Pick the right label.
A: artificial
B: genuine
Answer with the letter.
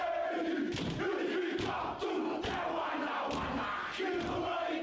B